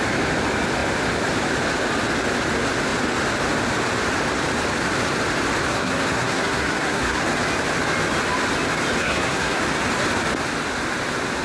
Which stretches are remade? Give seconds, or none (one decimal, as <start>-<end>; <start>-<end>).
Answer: 5.7-7.2; 9.0-9.6